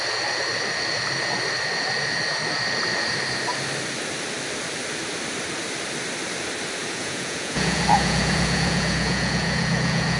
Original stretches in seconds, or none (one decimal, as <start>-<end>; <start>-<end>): 0.0-6.8